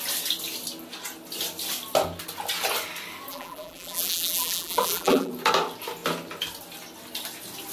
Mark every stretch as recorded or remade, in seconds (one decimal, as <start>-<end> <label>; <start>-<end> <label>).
0.0-3.3 recorded; 3.3-5.3 remade; 5.3-7.7 recorded